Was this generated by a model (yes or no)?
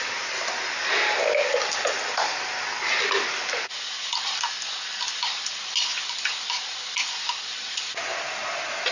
no